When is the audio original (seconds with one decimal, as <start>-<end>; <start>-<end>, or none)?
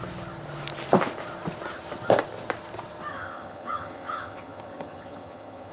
0.0-3.1